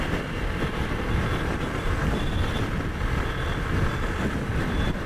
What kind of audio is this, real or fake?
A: fake